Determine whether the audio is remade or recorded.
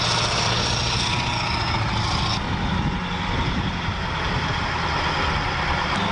recorded